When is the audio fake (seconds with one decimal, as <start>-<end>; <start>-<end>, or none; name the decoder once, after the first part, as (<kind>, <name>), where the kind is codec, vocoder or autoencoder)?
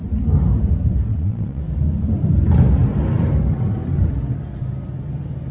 1.1-1.6 (vocoder, WaveNeXt)